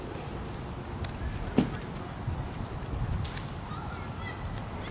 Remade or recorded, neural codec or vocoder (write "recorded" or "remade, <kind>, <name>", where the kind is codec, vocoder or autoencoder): recorded